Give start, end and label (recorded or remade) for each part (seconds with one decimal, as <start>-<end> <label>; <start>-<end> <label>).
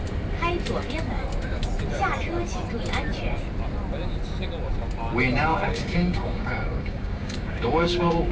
0.0-5.5 recorded; 5.5-8.3 remade